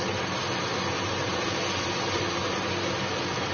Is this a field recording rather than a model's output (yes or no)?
yes